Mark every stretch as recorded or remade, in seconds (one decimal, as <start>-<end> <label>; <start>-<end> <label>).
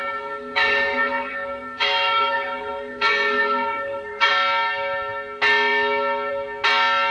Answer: 0.0-4.3 remade; 4.3-7.1 recorded